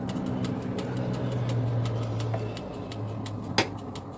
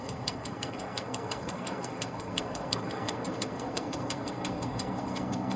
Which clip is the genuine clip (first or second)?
first